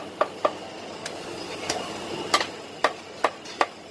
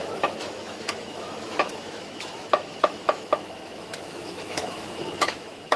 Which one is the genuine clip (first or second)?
first